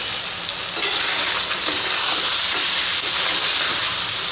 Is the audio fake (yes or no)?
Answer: no